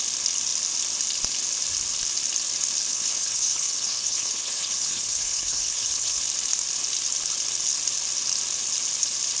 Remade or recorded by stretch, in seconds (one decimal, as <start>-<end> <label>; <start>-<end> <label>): 0.0-2.9 recorded; 2.9-6.2 remade; 6.2-9.4 recorded